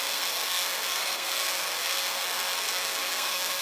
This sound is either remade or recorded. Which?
remade